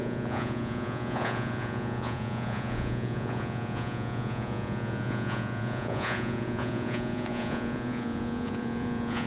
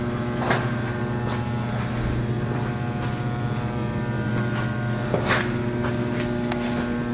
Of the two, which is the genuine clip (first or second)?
second